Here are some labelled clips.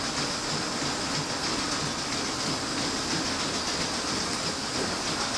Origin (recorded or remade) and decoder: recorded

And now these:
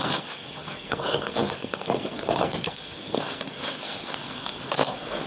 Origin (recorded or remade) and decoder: remade, codec, SNAC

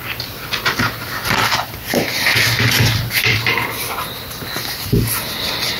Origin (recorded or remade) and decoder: recorded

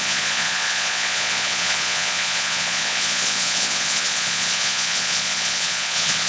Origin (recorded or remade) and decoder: remade, vocoder, Vocos